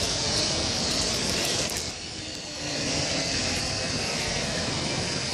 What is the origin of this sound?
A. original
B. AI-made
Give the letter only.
B